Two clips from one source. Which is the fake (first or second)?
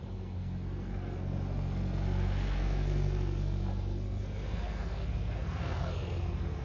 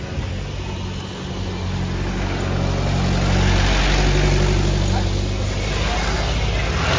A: first